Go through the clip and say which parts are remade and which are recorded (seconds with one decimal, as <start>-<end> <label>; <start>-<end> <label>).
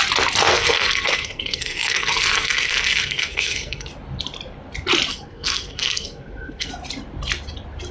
0.0-0.5 recorded; 0.5-3.9 remade; 3.9-5.1 recorded; 5.1-6.7 remade; 6.7-7.9 recorded